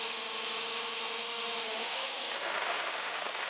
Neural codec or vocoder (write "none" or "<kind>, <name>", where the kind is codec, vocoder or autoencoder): autoencoder, DAC-VAE